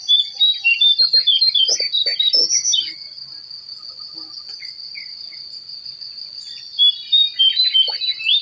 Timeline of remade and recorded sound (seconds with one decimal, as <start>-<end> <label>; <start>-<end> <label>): 0.0-8.4 recorded